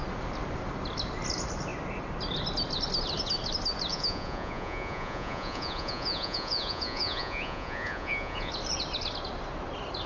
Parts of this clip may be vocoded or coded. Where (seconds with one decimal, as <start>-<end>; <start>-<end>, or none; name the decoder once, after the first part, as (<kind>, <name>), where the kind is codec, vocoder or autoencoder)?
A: 3.9-8.5 (vocoder, Vocos)